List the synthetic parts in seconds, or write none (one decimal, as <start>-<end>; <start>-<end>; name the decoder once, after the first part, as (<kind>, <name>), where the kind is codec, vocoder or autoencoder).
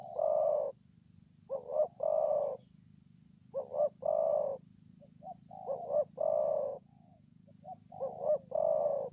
0.0-0.7 (vocoder, Vocos); 6.7-7.5